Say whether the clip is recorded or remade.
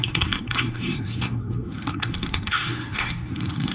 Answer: remade